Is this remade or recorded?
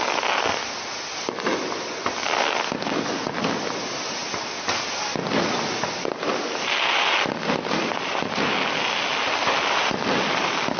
recorded